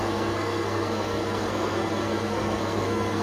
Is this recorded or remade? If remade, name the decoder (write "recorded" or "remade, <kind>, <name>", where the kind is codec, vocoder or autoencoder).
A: remade, codec, SNAC